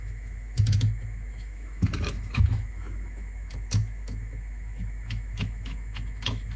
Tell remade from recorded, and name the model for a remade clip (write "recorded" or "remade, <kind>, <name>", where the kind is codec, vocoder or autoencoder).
remade, autoencoder, DAC-VAE